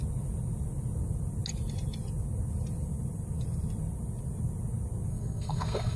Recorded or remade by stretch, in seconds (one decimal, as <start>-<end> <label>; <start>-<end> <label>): 0.0-5.1 recorded; 5.1-6.0 remade